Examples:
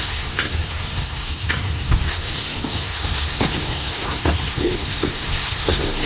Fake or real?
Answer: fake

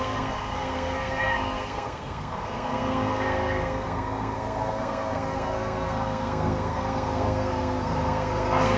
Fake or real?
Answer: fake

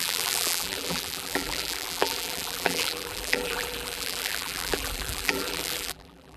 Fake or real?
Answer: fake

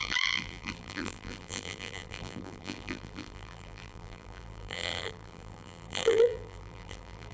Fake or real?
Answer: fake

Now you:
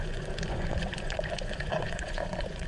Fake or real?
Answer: fake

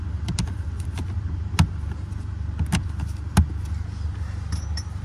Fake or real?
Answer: real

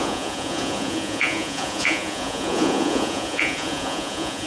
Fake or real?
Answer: fake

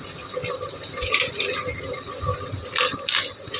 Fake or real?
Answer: real